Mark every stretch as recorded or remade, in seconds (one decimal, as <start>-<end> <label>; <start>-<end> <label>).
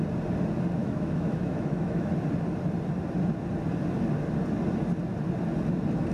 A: 0.0-0.8 recorded; 0.8-2.1 remade; 2.1-6.1 recorded